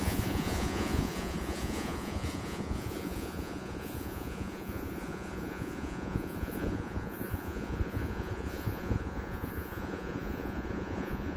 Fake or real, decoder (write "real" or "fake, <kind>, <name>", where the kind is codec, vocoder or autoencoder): fake, vocoder, Vocos